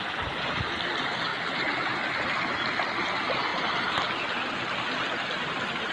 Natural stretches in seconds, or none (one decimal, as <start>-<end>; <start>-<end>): 0.0-5.9